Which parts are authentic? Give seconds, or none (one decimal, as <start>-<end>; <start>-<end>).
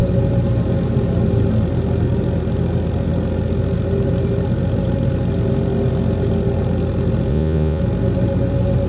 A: 0.0-7.3; 7.8-8.9